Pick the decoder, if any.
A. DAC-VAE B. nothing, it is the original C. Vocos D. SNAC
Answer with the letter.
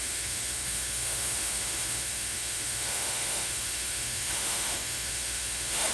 A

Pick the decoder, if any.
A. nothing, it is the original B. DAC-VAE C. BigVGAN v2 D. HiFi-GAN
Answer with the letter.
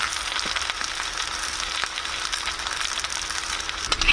A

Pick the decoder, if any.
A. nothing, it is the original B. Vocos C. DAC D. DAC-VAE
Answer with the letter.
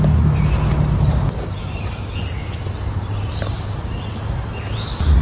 A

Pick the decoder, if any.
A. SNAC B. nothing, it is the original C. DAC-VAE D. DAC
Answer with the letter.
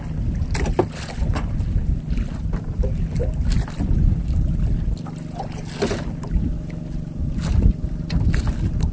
B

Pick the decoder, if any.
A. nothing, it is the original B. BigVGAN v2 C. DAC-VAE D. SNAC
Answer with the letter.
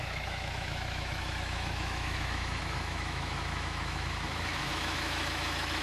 C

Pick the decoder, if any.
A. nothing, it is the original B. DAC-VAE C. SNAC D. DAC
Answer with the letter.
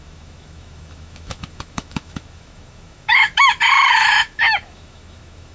B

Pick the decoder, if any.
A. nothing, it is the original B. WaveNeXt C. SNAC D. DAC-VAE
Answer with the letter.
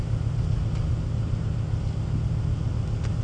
A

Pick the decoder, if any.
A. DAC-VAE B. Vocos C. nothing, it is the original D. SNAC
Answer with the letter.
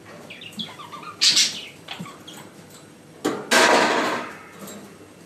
C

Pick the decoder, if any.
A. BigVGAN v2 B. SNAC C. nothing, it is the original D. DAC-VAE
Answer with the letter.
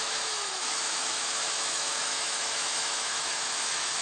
D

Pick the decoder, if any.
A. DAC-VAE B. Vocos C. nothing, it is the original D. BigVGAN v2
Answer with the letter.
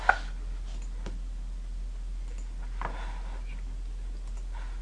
C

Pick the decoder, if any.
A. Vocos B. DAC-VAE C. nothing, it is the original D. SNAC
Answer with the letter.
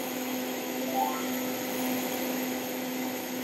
B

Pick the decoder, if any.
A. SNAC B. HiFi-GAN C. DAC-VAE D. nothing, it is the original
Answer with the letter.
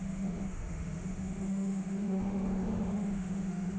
C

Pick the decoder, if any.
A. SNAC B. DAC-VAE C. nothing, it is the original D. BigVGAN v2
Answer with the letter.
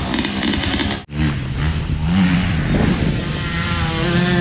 C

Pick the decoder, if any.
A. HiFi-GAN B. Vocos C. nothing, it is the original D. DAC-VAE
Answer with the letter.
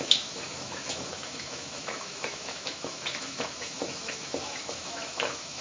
D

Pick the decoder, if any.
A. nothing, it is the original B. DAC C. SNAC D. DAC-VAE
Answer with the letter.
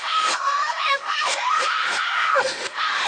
D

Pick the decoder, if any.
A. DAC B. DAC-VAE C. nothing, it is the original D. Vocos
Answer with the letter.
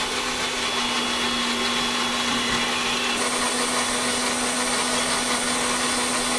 C